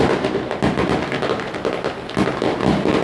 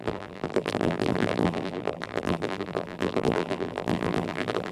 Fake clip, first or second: second